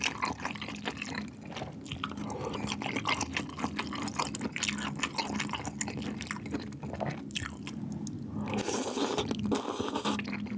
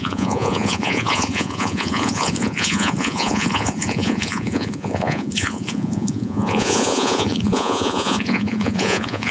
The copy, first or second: second